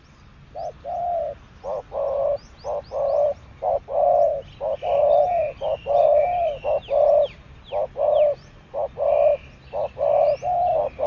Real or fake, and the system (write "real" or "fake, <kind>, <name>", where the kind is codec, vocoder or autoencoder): real